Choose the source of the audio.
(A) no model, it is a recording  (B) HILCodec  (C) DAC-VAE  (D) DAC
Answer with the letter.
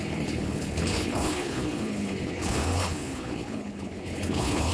B